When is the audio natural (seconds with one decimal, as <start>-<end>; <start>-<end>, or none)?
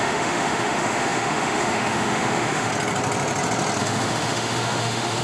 2.7-3.8